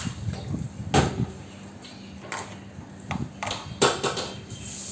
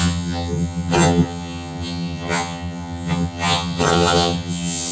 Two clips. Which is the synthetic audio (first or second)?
second